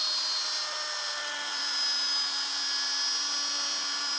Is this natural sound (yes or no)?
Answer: yes